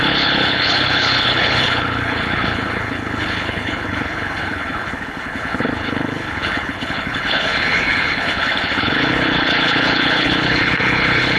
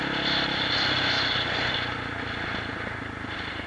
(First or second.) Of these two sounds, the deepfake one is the first